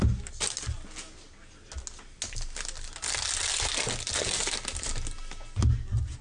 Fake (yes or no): no